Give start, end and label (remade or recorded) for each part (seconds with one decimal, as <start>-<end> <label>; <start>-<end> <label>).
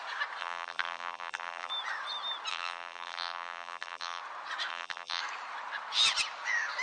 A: 0.0-0.4 recorded; 0.4-1.7 remade; 1.7-2.5 recorded; 2.5-4.2 remade; 4.2-4.7 recorded; 4.7-5.2 remade; 5.2-6.8 recorded